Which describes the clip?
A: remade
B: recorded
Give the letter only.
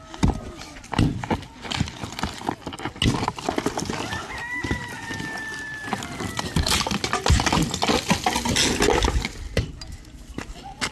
B